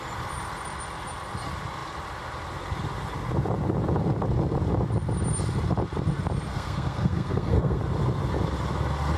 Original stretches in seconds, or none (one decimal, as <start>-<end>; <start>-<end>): 0.0-6.5; 7.8-9.2